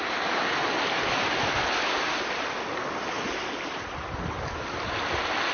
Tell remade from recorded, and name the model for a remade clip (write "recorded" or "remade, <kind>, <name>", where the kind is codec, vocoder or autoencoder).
recorded